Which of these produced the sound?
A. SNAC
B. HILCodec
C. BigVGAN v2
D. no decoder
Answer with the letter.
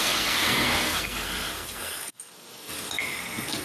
A